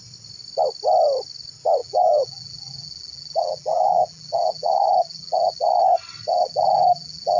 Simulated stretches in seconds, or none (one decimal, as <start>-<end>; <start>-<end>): 1.8-5.8; 6.3-7.4